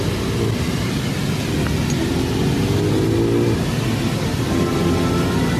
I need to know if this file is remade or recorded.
recorded